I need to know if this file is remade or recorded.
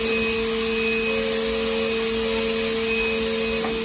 recorded